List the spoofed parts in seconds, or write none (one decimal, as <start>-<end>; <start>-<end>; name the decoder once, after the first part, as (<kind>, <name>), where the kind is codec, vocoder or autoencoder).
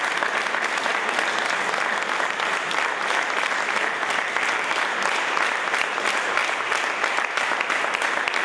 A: 6.4-6.9 (vocoder, BigVGAN v2)